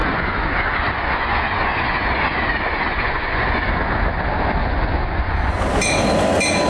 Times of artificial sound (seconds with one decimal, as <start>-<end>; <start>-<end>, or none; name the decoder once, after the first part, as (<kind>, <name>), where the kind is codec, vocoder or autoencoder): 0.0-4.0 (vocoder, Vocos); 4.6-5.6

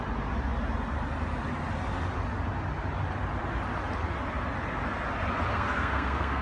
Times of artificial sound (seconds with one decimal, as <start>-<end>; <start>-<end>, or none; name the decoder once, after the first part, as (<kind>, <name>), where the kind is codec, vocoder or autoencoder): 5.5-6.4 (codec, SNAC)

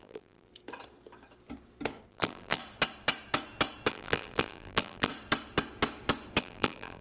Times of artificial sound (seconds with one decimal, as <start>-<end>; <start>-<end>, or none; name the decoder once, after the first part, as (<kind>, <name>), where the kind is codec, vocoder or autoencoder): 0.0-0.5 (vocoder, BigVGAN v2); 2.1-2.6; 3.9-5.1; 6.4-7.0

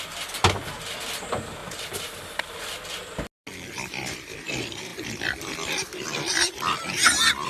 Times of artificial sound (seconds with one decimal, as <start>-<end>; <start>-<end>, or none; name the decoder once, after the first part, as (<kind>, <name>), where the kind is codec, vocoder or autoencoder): 1.6-2.5 (vocoder, BigVGAN v2)

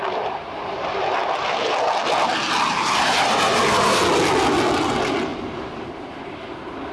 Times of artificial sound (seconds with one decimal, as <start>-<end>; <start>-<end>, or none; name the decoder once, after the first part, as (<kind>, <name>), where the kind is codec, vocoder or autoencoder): none